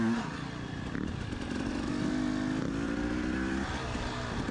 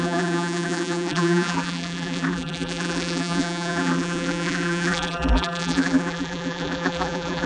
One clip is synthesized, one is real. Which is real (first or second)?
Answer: first